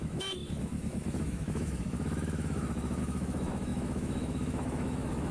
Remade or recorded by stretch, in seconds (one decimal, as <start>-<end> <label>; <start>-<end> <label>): 0.0-5.3 remade